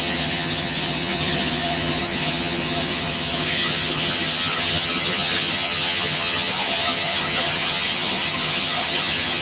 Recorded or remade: remade